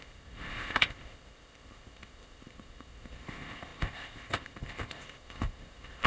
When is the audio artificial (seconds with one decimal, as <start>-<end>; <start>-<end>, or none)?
0.0-6.1